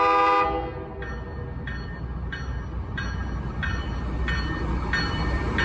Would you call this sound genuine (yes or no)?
yes